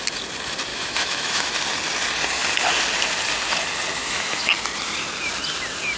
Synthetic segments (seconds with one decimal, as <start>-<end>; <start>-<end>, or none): 0.7-1.5; 3.9-4.5